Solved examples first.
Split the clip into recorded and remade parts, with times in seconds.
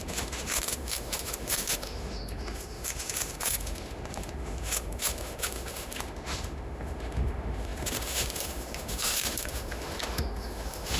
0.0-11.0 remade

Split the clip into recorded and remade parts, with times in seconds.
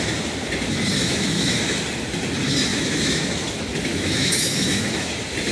0.0-1.0 recorded; 1.0-1.6 remade; 1.6-2.7 recorded; 2.7-3.3 remade; 3.3-3.9 recorded; 3.9-5.1 remade; 5.1-5.5 recorded